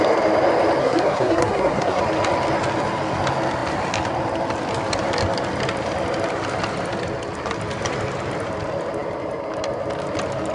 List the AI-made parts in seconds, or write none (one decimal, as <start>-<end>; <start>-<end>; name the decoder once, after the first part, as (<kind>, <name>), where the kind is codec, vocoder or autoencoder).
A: 0.8-2.0 (codec, SNAC)